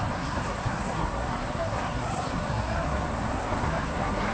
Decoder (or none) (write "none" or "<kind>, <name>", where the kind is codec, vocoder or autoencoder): codec, SNAC